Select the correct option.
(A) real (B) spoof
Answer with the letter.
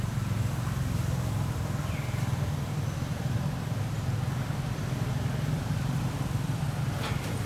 B